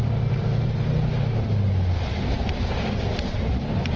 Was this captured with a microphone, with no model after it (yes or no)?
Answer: no